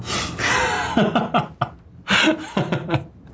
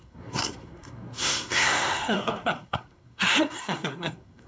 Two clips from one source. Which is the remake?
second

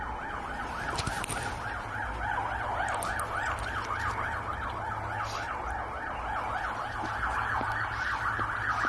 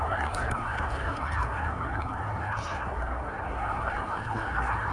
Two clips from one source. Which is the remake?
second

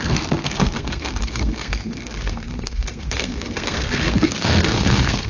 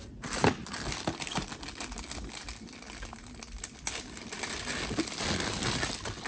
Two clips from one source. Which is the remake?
first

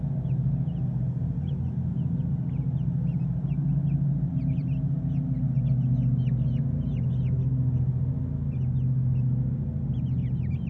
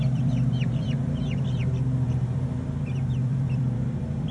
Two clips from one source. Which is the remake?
second